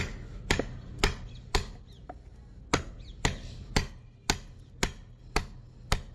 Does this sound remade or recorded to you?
recorded